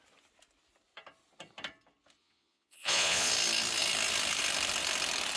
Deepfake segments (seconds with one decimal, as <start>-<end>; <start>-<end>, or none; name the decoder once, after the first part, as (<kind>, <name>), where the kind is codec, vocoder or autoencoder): 2.2-3.3 (vocoder, Vocos)